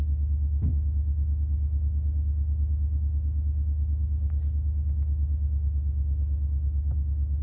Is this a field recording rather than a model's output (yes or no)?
yes